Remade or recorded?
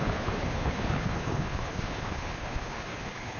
remade